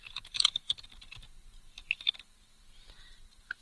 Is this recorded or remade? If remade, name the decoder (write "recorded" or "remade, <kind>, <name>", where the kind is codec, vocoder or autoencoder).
remade, vocoder, BigVGAN v2